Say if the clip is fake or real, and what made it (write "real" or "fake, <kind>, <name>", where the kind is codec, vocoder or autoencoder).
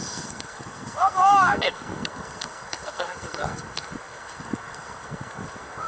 fake, codec, SNAC